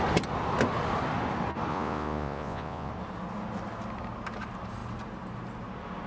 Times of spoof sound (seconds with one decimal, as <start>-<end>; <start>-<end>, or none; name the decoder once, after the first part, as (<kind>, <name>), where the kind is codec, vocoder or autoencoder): 1.7-2.9 (vocoder, Vocos)